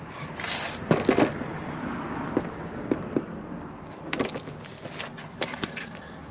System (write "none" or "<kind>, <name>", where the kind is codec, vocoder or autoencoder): none